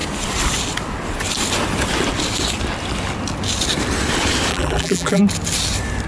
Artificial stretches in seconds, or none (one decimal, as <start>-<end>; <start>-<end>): 4.5-5.2